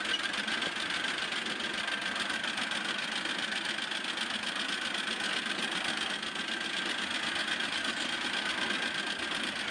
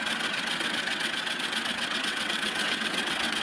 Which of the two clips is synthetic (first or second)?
second